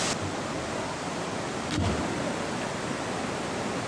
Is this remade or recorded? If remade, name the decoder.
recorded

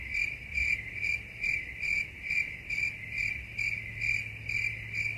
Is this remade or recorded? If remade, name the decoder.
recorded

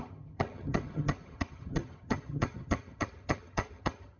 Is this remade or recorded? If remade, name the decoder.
remade, vocoder, HiFi-GAN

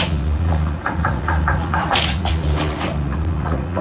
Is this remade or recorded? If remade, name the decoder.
remade, vocoder, Vocos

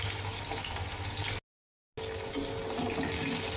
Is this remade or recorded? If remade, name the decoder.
recorded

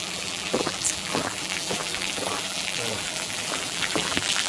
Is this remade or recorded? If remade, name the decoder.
remade, vocoder, BigVGAN v2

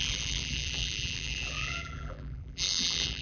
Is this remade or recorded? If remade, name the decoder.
remade, vocoder, BigVGAN v2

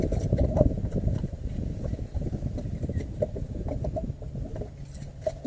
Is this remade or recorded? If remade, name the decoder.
recorded